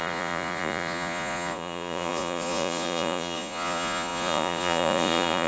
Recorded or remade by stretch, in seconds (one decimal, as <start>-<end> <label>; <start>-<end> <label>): 0.0-5.5 remade